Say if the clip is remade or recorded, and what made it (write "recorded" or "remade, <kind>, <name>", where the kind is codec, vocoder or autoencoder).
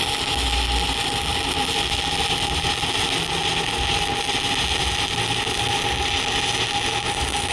recorded